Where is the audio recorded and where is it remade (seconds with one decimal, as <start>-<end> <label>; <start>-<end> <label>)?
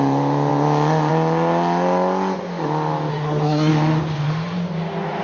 0.0-3.1 recorded; 3.1-3.7 remade; 3.7-5.2 recorded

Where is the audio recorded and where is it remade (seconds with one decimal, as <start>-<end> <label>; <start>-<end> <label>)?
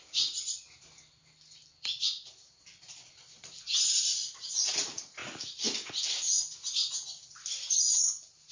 0.0-8.5 recorded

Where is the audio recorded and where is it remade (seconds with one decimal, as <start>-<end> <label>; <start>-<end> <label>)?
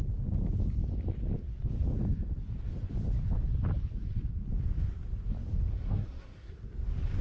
0.0-5.7 recorded; 5.7-6.5 remade; 6.5-7.2 recorded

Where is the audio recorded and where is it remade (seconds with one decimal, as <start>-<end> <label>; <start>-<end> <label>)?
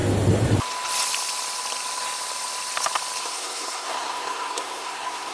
0.0-3.2 recorded; 3.2-5.3 remade